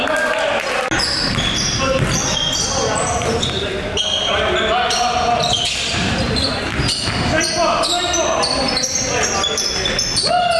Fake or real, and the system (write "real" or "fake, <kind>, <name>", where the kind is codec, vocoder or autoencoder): real